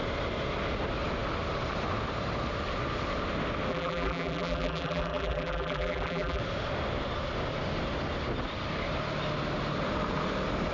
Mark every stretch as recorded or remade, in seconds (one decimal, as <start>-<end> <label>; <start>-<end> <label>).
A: 0.0-3.7 recorded; 3.7-6.4 remade; 6.4-10.7 recorded